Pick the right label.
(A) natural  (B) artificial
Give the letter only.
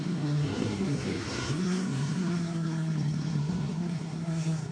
B